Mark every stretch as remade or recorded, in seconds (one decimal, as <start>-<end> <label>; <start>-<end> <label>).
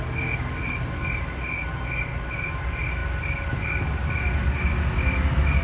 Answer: 0.0-5.6 recorded